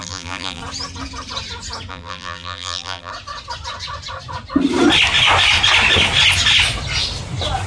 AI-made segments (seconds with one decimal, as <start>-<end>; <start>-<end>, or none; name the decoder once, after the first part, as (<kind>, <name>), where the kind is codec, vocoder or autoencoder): 0.0-0.6 (vocoder, BigVGAN v2); 1.9-3.1